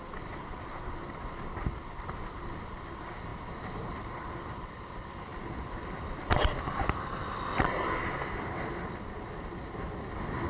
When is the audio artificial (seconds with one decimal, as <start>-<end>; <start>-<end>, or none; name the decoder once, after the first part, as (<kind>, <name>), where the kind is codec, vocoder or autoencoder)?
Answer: none